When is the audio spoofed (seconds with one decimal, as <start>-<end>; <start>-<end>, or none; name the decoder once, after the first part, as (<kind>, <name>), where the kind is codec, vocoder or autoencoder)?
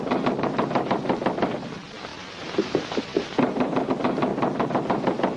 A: none